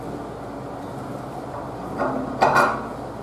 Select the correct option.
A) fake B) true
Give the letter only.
B